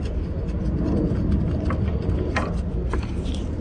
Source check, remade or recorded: recorded